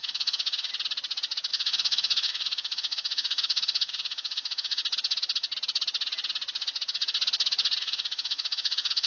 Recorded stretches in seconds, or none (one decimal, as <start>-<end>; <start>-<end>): 0.7-1.5; 4.8-7.8